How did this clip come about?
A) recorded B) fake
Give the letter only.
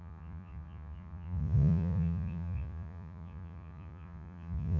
B